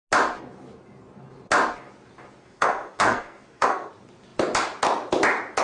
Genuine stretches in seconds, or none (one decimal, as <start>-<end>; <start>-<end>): 0.0-2.4; 3.9-5.6